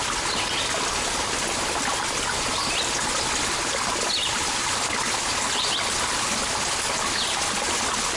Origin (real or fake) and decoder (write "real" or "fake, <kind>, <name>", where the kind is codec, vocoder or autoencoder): real